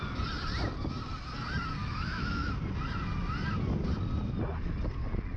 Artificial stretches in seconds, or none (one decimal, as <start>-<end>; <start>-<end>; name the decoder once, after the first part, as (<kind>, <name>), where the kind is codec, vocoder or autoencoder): 1.8-2.5 (autoencoder, DAC-VAE)